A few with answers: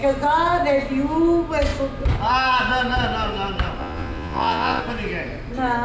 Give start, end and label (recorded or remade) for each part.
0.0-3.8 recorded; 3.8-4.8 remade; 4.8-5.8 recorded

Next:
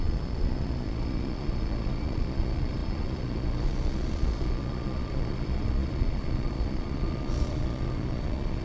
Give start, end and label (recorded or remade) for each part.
0.0-8.6 remade